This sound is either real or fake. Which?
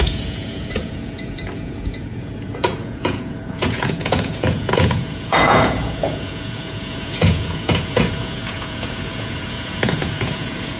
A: fake